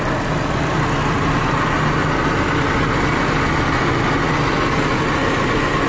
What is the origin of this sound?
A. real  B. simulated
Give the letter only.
A